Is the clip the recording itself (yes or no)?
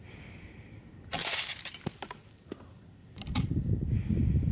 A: yes